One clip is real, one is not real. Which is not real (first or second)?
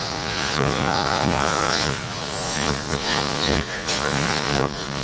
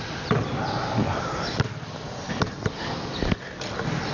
first